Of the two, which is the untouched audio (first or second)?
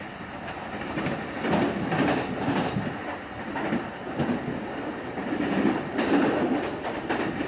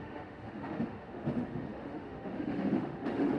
first